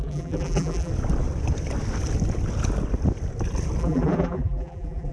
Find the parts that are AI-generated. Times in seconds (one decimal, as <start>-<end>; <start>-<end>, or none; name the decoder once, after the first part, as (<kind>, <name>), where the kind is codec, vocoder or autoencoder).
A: 0.0-0.9 (vocoder, BigVGAN v2); 3.8-5.1